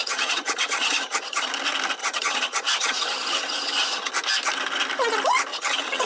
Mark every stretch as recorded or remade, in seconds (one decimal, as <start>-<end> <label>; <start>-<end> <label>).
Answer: 0.0-1.5 remade; 1.5-2.0 recorded; 2.0-4.1 remade; 4.1-5.5 recorded; 5.5-6.1 remade